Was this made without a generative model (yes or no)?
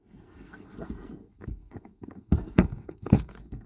no